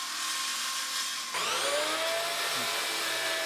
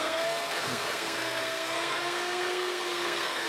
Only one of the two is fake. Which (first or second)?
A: second